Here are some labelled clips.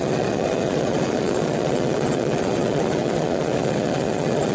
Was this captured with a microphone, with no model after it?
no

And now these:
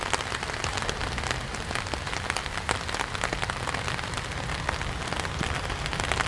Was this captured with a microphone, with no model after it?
yes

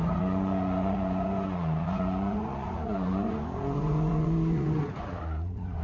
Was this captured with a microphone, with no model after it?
no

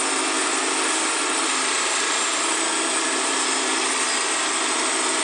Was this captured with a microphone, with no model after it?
yes